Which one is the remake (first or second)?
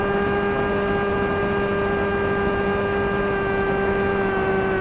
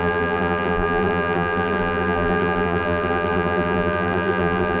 second